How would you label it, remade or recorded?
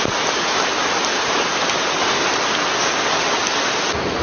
recorded